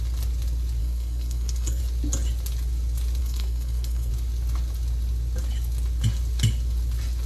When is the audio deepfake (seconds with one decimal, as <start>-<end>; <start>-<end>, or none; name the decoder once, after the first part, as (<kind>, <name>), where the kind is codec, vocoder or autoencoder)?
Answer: 0.8-1.8 (codec, SNAC); 3.2-4.1